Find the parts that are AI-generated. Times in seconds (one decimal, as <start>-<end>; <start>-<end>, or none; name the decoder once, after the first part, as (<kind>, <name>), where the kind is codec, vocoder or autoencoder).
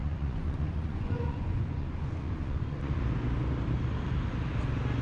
0.0-3.0 (vocoder, Vocos)